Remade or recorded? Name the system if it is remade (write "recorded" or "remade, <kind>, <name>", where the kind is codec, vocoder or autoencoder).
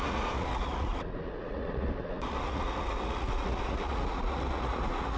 remade, vocoder, Vocos